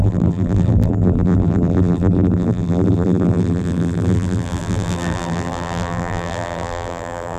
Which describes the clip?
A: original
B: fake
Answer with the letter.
B